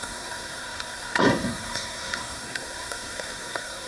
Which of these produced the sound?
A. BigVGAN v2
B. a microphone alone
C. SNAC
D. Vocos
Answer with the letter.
C